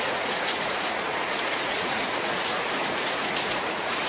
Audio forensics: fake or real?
fake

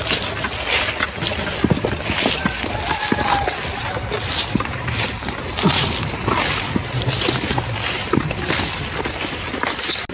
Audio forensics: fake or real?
real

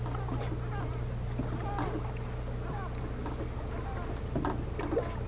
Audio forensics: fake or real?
real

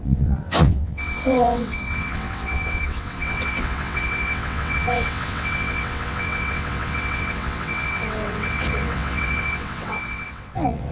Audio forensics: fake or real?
fake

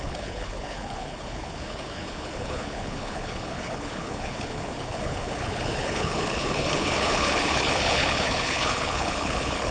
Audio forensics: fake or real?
fake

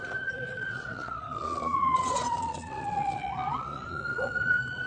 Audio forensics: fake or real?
fake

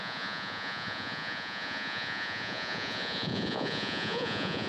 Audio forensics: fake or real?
fake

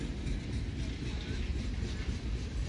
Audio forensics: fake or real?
real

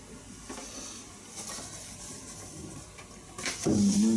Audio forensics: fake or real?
real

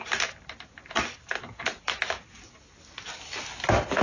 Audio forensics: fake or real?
real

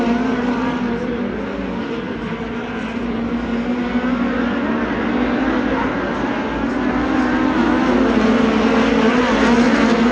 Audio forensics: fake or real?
real